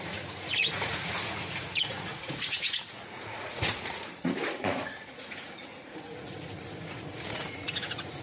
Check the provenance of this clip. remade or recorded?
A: remade